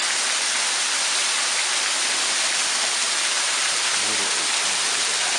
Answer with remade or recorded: recorded